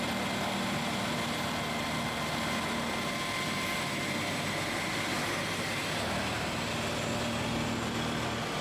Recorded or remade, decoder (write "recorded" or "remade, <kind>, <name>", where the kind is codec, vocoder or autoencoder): recorded